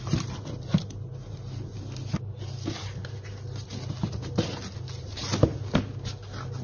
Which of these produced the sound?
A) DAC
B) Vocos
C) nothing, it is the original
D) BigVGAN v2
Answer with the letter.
C